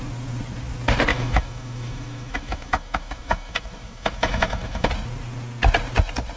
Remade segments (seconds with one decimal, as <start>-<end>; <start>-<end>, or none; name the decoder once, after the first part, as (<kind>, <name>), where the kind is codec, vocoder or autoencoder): 1.1-4.9 (autoencoder, DAC-VAE)